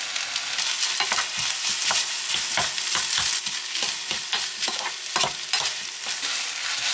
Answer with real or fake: real